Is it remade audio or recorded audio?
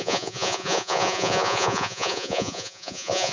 remade